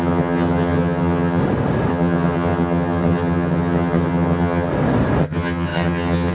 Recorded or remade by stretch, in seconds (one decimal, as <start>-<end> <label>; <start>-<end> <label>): 0.0-1.4 remade; 1.4-1.9 recorded; 1.9-4.7 remade; 4.7-5.2 recorded; 5.2-6.3 remade